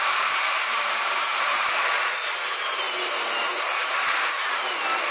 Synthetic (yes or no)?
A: yes